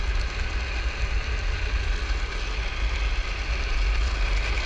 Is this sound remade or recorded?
recorded